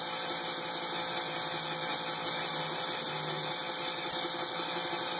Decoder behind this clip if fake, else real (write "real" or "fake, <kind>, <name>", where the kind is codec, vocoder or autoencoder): real